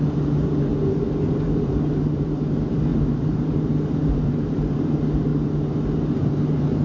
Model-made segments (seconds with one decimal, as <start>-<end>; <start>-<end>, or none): 0.0-0.7; 1.3-5.3; 6.2-6.8